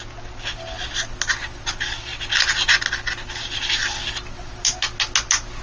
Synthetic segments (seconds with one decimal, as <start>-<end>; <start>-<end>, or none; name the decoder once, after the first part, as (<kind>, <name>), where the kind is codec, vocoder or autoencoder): none